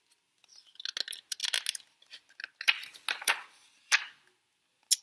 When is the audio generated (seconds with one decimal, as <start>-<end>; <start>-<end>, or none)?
none

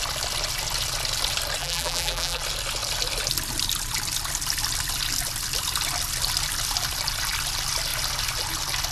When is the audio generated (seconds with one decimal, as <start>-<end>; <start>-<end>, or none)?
1.6-2.4